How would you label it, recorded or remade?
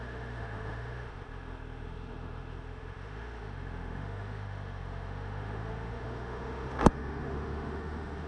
remade